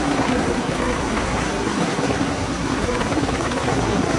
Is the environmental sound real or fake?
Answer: fake